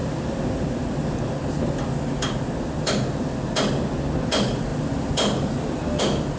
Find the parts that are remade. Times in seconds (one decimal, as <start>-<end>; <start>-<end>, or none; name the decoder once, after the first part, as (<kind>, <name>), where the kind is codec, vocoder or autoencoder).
none